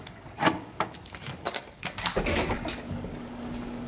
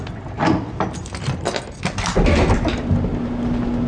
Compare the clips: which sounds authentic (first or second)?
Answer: second